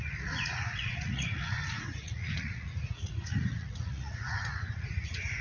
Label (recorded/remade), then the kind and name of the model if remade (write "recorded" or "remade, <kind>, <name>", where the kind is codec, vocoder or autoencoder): remade, vocoder, Vocos